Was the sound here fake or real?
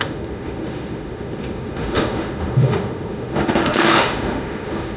fake